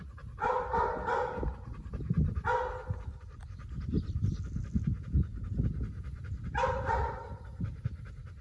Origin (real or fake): real